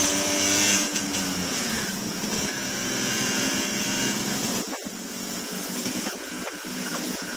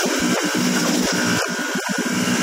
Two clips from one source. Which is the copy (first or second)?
first